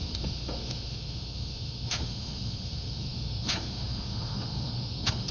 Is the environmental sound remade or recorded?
remade